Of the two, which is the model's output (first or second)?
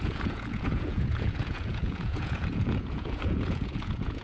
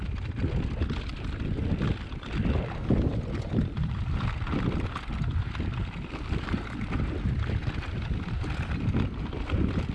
first